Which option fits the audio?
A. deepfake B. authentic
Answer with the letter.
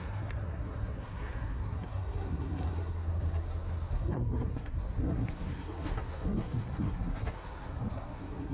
A